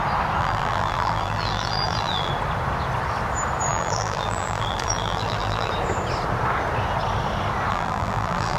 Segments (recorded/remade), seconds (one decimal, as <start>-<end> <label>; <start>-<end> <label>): 0.0-0.4 recorded; 0.4-2.3 remade; 2.3-3.7 recorded; 3.7-5.7 remade; 5.7-7.7 recorded; 7.7-8.6 remade

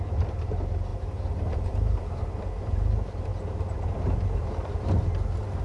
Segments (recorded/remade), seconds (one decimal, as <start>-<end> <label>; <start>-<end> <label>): 0.0-0.9 recorded; 0.9-2.2 remade; 2.2-5.6 recorded

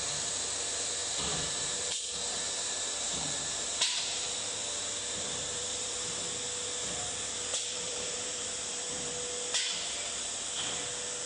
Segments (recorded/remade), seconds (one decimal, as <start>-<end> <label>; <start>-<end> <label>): 0.0-1.0 recorded; 1.0-6.2 remade; 6.2-7.5 recorded; 7.5-9.1 remade; 9.1-11.3 recorded

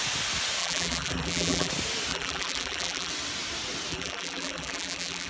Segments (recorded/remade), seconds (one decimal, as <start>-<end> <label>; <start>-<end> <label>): 0.0-0.6 recorded; 0.6-1.7 remade; 1.7-2.1 recorded; 2.1-3.1 remade; 3.1-3.9 recorded; 3.9-5.3 remade

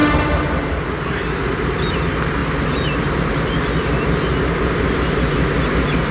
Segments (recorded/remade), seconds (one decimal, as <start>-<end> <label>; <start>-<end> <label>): 0.0-1.8 remade; 1.8-6.1 recorded

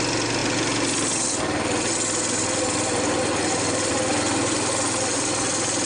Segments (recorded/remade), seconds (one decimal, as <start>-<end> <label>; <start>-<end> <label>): 0.0-5.9 recorded